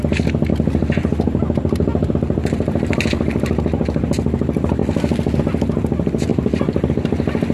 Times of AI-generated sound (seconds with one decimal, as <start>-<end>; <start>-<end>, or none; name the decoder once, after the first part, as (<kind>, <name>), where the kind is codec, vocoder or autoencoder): 6.3-6.9 (vocoder, BigVGAN v2)